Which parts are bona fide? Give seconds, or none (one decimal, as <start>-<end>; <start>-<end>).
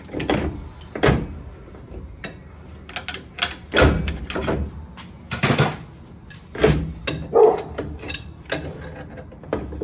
0.0-9.8